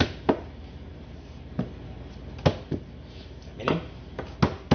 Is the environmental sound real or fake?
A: real